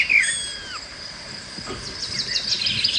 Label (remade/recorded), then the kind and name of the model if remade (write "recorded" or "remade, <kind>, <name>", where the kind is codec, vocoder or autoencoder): recorded